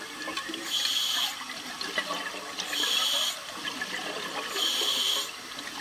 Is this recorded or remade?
recorded